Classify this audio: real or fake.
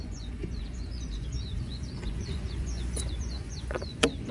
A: fake